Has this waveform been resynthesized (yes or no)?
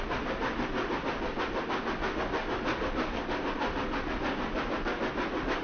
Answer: no